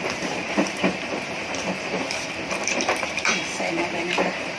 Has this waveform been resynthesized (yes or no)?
yes